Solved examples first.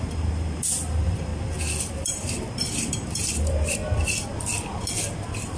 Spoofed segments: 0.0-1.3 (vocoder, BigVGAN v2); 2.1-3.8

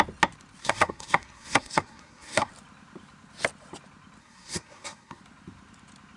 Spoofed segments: 0.6-2.5 (codec, SNAC); 4.2-5.2

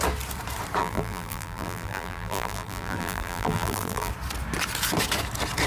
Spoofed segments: 0.8-4.1 (vocoder, BigVGAN v2)